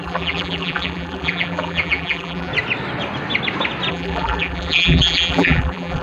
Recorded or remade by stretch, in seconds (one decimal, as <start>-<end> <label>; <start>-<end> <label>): 0.0-2.5 remade; 2.5-3.9 recorded; 3.9-6.0 remade